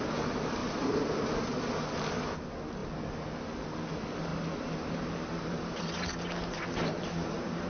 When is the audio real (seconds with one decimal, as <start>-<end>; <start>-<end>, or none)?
0.0-0.6; 1.6-4.3